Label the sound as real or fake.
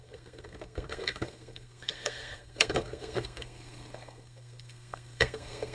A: fake